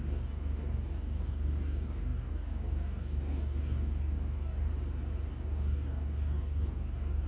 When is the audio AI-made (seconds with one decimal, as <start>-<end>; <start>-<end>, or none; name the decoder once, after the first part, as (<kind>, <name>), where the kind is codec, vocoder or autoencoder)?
0.0-4.7 (codec, DAC); 5.3-7.3